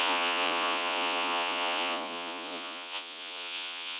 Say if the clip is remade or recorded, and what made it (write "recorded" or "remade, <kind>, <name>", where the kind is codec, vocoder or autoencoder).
remade, vocoder, Vocos